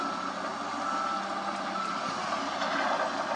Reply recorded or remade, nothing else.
recorded